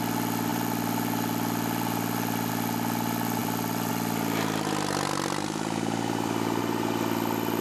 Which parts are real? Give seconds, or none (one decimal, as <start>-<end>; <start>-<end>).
0.0-0.5; 2.5-3.4; 3.9-5.1; 6.6-7.6